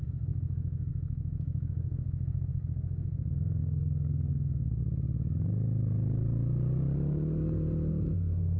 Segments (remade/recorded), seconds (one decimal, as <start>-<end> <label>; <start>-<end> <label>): 0.0-4.8 remade; 4.8-7.9 recorded; 7.9-8.6 remade